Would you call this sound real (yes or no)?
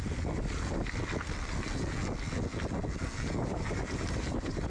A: yes